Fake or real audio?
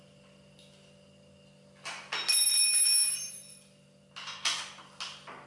real